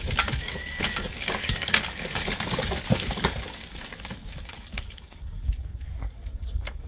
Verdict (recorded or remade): remade